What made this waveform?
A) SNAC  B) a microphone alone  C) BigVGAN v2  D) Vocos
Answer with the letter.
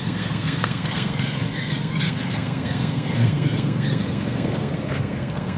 A